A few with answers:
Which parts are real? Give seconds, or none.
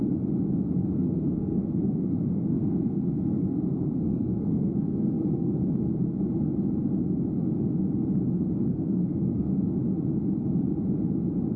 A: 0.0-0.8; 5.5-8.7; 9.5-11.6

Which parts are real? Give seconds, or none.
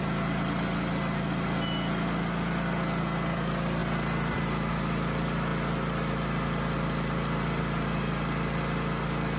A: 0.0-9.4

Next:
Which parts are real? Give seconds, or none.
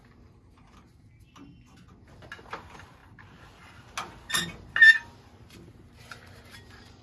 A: 0.0-7.0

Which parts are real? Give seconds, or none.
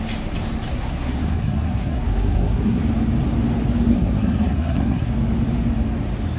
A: 0.0-0.7; 2.8-3.9; 5.1-6.4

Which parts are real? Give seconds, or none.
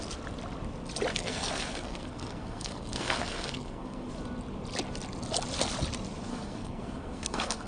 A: 0.0-1.1; 4.1-6.3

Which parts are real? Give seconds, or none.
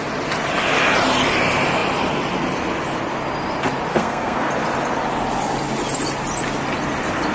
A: 0.0-3.9; 4.5-7.3